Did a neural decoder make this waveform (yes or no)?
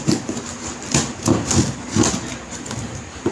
no